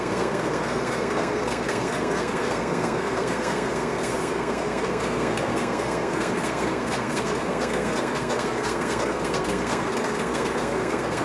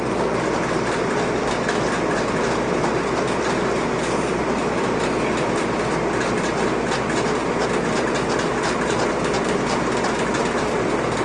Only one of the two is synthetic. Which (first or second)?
first